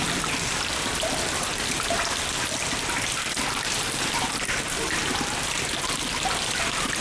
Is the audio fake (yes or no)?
no